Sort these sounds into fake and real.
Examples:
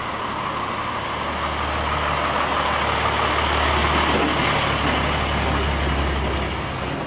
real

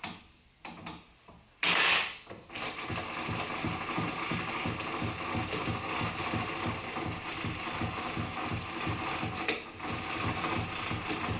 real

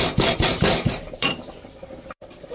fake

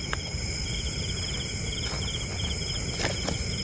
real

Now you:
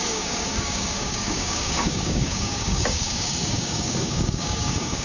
fake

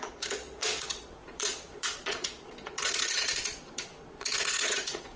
fake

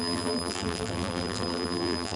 fake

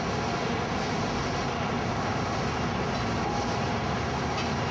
real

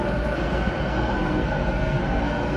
fake